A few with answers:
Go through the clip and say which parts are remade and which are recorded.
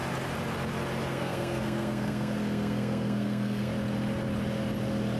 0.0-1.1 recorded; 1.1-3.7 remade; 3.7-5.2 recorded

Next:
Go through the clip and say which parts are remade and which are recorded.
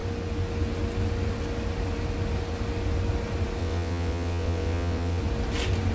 0.0-3.6 recorded; 3.6-5.2 remade; 5.2-5.9 recorded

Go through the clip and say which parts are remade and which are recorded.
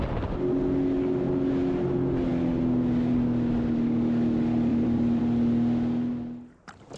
0.0-4.7 recorded; 4.7-5.2 remade; 5.2-7.0 recorded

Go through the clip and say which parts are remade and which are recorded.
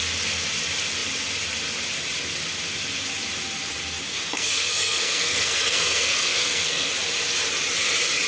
0.0-4.1 recorded; 4.1-6.9 remade; 6.9-8.3 recorded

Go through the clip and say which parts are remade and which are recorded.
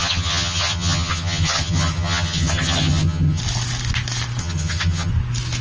0.0-3.4 remade; 3.4-4.4 recorded; 4.4-5.1 remade; 5.1-5.6 recorded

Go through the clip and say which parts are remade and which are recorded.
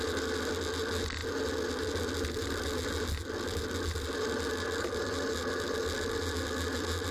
0.0-7.1 recorded